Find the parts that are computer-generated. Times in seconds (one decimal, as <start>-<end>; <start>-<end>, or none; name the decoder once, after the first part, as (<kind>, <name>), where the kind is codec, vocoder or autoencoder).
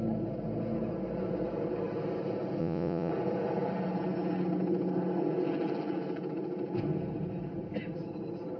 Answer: 2.6-3.1 (vocoder, Vocos)